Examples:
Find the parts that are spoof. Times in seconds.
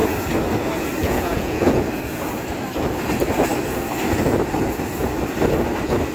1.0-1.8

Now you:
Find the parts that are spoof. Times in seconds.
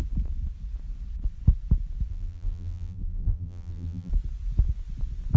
2.1-4.1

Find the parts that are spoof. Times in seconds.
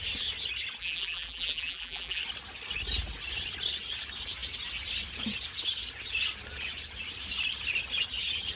0.8-2.2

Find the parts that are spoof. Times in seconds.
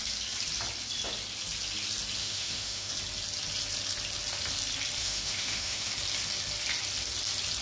2.2-2.9; 5.0-5.9